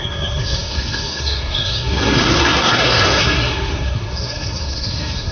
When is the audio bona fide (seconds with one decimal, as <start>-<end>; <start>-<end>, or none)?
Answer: none